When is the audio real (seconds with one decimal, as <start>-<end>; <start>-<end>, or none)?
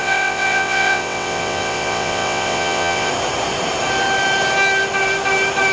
3.1-5.7